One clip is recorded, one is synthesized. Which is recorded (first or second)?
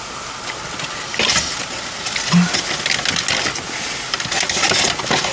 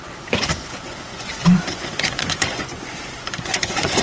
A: first